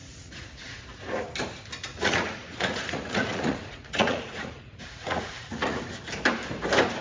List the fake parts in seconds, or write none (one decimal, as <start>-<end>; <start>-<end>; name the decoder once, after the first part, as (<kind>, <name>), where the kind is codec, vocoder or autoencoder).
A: 0.0-0.8 (vocoder, Vocos); 1.9-5.8